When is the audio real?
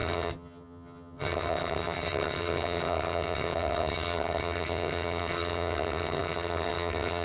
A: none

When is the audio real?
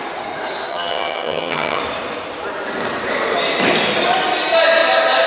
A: 0.0-0.7; 1.8-5.3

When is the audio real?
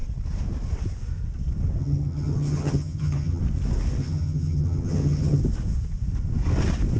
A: 0.0-1.8; 3.4-4.0; 5.4-7.0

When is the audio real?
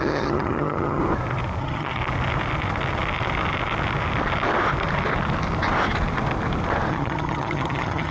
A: 1.0-1.6; 2.0-6.9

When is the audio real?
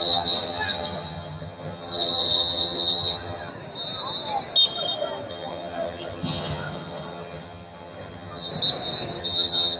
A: 3.5-5.3; 8.5-9.2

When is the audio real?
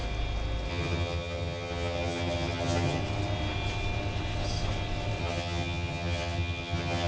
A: 0.0-0.7; 3.0-5.2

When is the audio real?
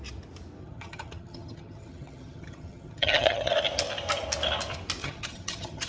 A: 0.0-0.6; 3.5-5.0